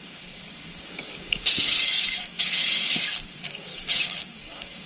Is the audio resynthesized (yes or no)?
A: yes